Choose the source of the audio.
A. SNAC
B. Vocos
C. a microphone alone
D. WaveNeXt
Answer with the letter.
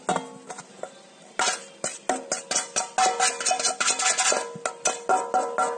C